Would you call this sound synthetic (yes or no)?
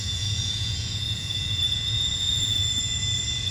yes